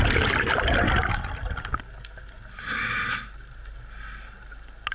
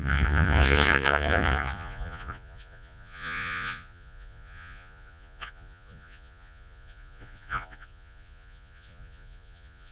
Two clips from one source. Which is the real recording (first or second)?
first